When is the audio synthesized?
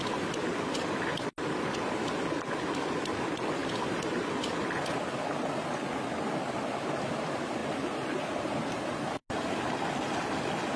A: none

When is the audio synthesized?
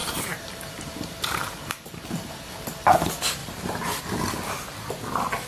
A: 0.0-1.9 (vocoder, BigVGAN v2); 3.4-4.0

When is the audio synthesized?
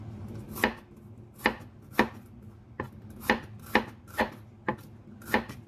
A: none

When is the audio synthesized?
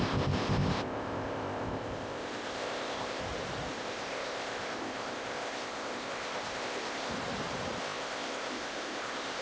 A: 0.0-3.2 (codec, ZipCodec); 3.7-7.1; 7.8-9.4